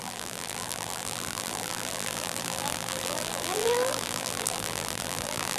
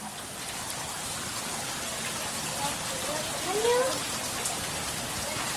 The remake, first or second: first